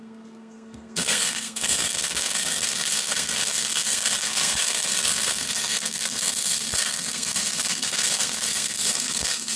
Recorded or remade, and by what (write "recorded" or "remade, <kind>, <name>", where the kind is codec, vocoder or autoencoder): remade, codec, SNAC